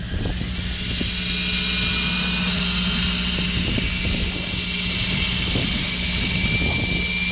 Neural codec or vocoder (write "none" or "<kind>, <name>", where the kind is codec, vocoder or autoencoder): none